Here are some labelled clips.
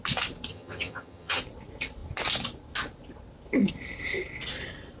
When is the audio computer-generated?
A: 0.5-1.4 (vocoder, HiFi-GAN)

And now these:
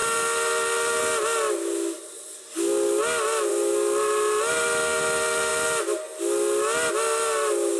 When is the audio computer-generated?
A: none

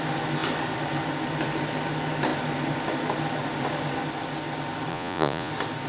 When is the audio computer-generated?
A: 4.9-5.5 (vocoder, Vocos)

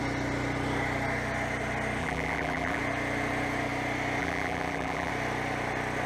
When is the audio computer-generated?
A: 2.0-2.8 (vocoder, BigVGAN v2); 4.2-5.1

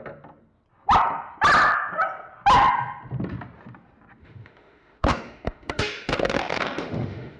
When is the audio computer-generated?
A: 4.2-7.4 (autoencoder, DAC-VAE)

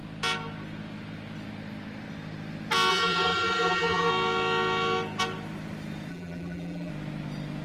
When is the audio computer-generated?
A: 2.9-4.1 (vocoder, BigVGAN v2); 6.1-6.9

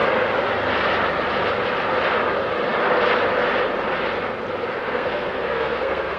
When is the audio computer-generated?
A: 4.8-6.2 (codec, SNAC)